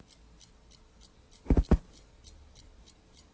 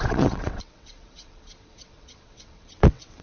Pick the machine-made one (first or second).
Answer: second